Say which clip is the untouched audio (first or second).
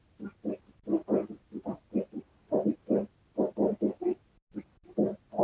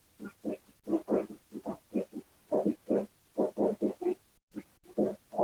first